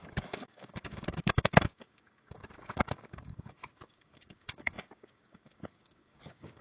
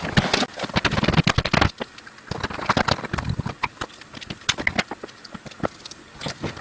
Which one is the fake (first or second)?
first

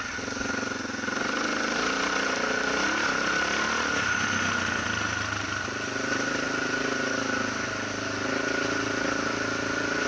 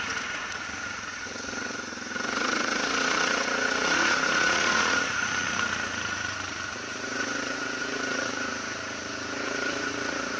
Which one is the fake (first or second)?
second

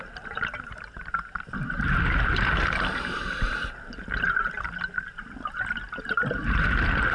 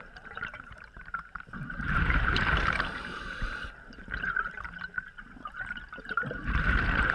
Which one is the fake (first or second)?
second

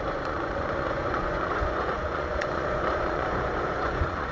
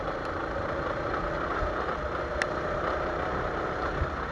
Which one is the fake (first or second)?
first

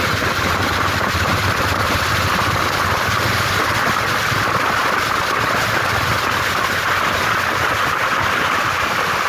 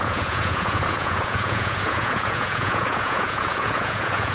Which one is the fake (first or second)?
second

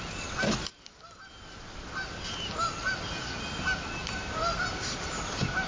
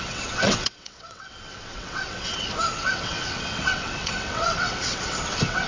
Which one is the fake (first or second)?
second